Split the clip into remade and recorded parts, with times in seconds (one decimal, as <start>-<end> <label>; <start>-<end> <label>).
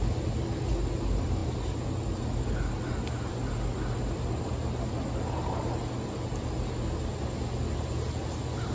0.0-8.7 recorded